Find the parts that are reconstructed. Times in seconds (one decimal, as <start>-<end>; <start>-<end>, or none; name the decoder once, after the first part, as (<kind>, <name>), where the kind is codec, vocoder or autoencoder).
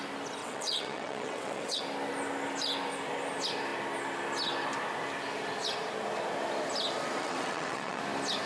0.4-1.8 (vocoder, WaveNeXt); 7.2-8.0